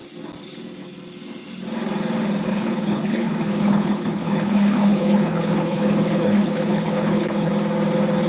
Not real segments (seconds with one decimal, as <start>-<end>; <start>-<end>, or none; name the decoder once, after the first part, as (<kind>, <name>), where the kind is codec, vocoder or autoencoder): 2.5-7.5 (codec, HILCodec)